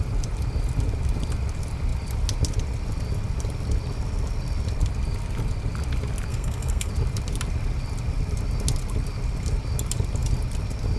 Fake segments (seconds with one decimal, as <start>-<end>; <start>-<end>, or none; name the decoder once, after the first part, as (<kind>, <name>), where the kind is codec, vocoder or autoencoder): 6.3-6.9 (codec, SNAC)